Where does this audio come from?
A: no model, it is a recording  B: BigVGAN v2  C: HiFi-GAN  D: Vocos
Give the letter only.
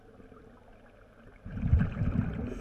A